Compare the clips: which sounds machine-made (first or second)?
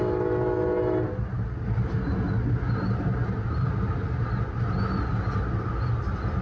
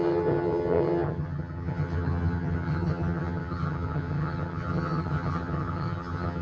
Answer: second